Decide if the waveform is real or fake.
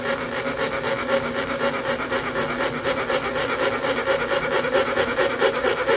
real